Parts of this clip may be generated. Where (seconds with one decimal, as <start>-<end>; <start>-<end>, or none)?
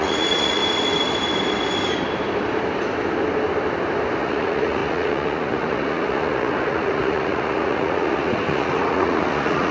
0.0-0.6; 4.2-9.7